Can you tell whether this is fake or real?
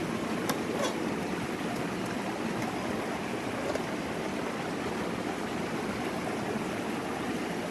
real